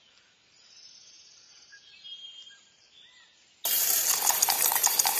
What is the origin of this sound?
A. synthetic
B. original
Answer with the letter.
A